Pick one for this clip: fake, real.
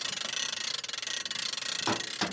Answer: real